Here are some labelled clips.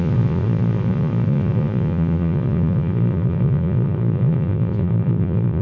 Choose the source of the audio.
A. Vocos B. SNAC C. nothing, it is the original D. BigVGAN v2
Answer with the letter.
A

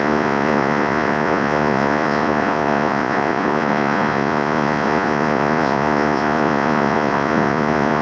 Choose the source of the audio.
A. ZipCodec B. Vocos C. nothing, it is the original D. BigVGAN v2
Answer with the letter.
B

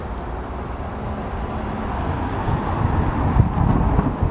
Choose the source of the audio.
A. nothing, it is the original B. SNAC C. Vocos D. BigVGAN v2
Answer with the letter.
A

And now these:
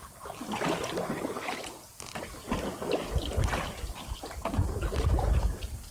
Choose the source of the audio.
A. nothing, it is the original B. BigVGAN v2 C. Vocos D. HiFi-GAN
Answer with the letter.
A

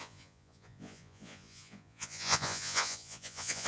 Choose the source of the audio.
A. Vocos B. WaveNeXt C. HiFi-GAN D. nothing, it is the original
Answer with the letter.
A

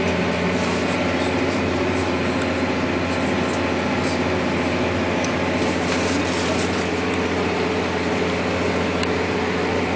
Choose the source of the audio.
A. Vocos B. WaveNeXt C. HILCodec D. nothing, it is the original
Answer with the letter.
D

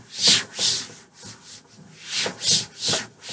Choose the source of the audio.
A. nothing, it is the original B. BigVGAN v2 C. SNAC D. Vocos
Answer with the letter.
A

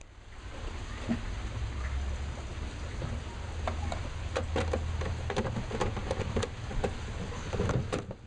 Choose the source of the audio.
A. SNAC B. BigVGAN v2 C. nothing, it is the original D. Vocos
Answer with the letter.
C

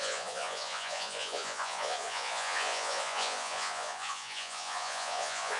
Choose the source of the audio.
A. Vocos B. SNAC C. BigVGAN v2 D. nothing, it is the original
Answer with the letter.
A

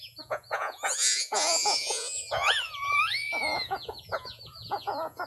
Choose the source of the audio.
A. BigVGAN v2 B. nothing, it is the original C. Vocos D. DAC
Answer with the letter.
C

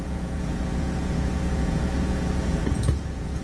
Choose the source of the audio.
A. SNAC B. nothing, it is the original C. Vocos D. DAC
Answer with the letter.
C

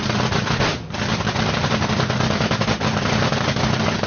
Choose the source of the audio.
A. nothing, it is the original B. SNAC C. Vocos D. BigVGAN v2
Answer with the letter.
A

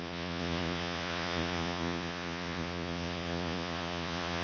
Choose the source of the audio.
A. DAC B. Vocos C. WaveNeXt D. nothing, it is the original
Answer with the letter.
B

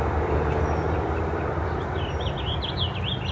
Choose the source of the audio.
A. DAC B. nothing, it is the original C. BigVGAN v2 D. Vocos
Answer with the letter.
B